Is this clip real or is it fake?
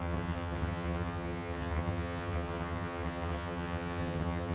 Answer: fake